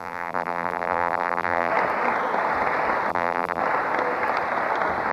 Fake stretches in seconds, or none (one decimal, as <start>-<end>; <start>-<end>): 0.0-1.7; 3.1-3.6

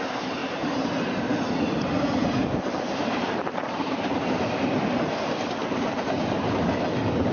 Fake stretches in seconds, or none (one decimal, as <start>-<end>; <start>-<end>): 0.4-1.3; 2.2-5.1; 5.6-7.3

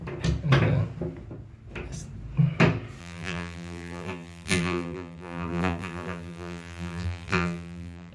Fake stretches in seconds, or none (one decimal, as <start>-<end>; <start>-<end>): 3.0-8.1